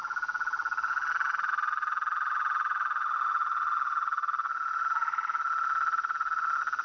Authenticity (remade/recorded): recorded